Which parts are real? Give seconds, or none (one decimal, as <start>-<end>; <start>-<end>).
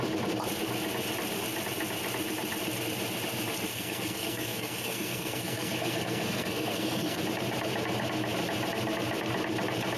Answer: 0.0-3.7; 7.2-10.0